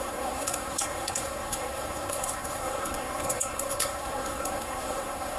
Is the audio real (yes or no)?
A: no